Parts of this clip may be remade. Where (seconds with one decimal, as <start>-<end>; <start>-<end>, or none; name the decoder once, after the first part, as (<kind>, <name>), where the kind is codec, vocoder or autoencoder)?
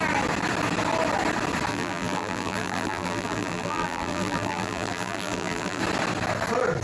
1.7-5.8 (vocoder, BigVGAN v2)